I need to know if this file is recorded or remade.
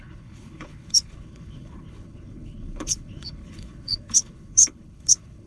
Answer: remade